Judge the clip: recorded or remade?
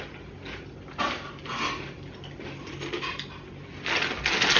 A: recorded